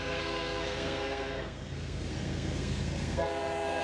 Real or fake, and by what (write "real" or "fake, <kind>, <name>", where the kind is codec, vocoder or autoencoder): fake, codec, SNAC